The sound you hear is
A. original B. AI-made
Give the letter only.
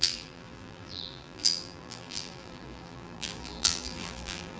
B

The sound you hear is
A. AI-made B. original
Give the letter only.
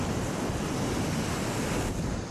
B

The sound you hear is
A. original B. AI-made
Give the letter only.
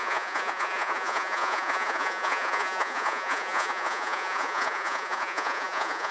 B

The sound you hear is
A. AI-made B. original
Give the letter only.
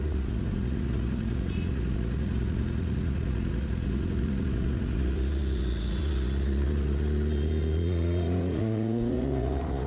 A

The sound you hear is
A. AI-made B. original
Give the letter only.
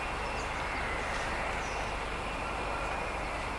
B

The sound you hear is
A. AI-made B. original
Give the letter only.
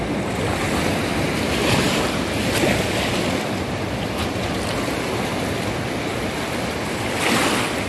B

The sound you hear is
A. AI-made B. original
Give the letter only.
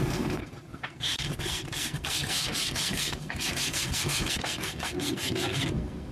A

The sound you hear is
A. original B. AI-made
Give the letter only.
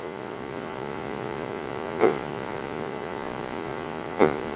B